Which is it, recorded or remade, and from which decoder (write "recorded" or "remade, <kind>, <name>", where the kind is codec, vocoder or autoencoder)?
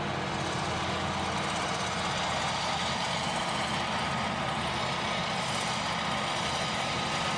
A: recorded